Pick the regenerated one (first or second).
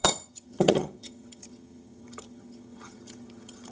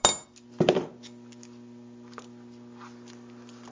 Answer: first